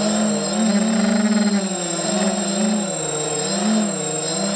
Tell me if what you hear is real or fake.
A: real